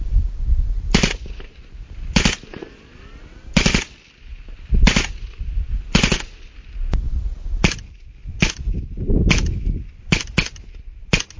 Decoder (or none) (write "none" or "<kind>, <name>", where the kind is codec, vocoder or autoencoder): none